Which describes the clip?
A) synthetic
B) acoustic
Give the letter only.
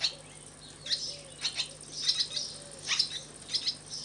B